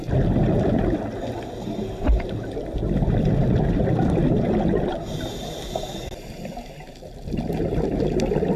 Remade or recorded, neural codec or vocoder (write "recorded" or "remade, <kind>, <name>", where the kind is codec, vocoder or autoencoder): recorded